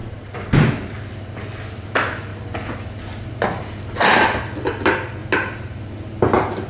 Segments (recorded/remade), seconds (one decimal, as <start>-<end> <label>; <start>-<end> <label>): 0.0-6.7 recorded